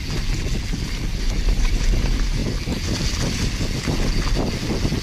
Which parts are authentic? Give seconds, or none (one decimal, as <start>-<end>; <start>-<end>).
0.0-5.0